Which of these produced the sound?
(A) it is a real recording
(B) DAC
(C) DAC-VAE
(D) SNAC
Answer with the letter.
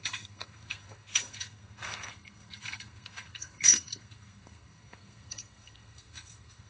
D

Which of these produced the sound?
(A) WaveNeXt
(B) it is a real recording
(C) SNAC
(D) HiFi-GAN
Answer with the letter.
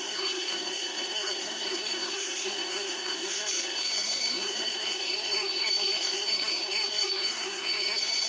C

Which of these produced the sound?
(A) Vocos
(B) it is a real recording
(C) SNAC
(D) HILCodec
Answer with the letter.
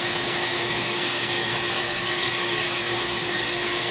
C